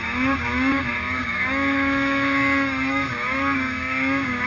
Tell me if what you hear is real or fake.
fake